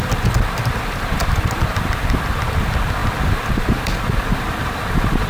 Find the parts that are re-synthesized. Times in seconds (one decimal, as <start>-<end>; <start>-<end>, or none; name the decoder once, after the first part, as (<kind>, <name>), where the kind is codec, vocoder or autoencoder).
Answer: 0.0-3.0 (vocoder, BigVGAN v2); 3.5-5.3